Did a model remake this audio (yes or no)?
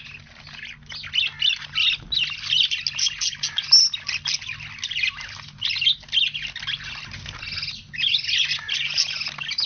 no